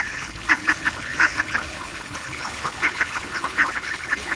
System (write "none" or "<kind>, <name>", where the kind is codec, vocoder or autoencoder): codec, HILCodec